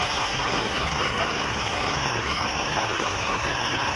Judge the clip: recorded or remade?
remade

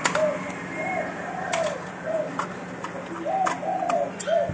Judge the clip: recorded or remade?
recorded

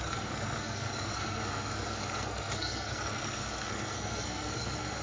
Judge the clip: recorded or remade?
remade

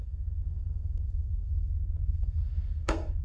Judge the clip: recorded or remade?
remade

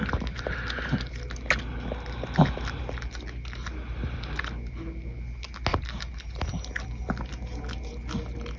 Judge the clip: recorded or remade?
recorded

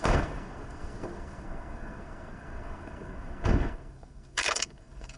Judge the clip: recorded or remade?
remade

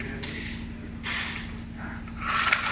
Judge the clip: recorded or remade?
recorded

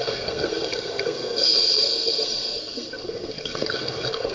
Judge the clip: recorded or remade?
remade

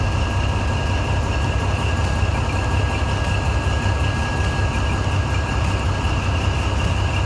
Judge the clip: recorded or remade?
recorded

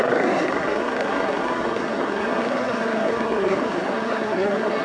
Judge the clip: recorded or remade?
remade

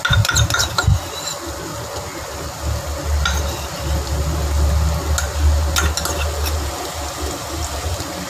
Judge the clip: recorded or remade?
recorded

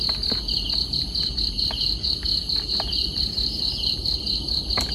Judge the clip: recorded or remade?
recorded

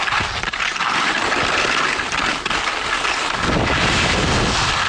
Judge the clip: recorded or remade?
recorded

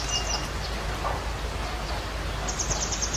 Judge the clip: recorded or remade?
recorded